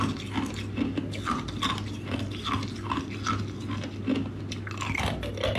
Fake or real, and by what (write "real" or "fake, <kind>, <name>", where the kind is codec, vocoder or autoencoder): real